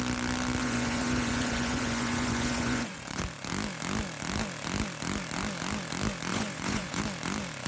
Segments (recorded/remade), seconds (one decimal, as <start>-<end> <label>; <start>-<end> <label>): 0.0-0.6 recorded; 0.6-3.2 remade; 3.2-6.3 recorded; 6.3-7.0 remade; 7.0-7.7 recorded